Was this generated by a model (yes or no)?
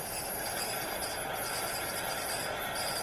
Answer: no